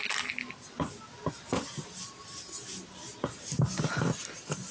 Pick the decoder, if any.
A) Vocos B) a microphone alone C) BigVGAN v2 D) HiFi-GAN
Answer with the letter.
B